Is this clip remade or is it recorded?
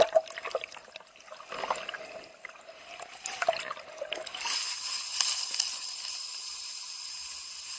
recorded